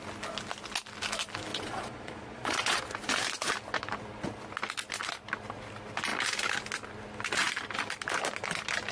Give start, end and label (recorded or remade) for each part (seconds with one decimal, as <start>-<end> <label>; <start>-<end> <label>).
0.0-1.5 recorded; 1.5-2.8 remade; 2.8-8.9 recorded